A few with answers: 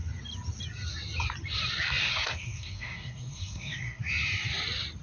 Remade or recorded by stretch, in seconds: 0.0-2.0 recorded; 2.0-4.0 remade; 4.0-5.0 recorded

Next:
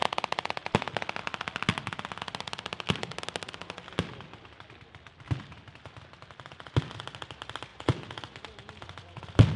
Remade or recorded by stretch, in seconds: 0.0-9.6 recorded

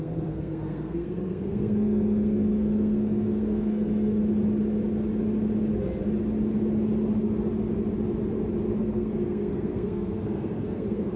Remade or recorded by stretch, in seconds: 0.0-4.2 remade; 4.2-8.8 recorded; 8.8-11.2 remade

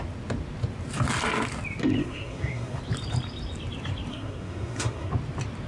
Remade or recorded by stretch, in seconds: 0.0-2.0 recorded; 2.0-2.8 remade; 2.8-4.1 recorded; 4.1-5.1 remade; 5.1-5.7 recorded